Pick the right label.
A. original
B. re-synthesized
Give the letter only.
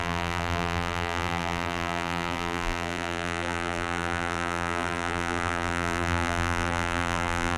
B